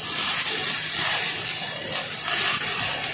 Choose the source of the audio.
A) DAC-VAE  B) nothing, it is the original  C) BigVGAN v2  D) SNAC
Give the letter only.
B